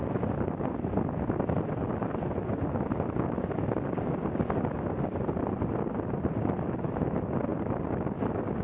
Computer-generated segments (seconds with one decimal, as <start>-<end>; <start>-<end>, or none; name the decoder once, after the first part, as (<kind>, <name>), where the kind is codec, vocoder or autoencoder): none